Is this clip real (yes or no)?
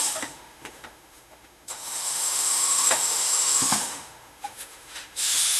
no